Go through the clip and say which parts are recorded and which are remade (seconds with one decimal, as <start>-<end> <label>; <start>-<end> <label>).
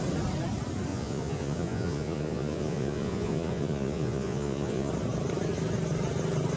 0.0-0.9 recorded; 0.9-4.9 remade; 4.9-6.6 recorded